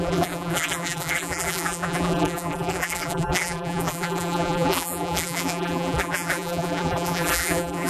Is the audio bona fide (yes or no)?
no